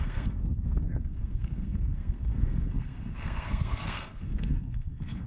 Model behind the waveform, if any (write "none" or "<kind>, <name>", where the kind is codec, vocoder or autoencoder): codec, SNAC